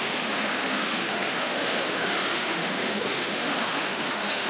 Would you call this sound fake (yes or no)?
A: yes